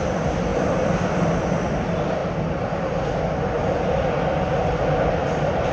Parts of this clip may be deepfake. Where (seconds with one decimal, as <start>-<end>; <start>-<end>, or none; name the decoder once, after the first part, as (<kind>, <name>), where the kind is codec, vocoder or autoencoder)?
none